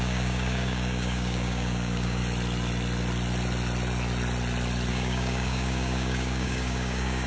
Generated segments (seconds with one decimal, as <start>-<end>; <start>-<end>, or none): 0.0-2.2; 4.9-7.3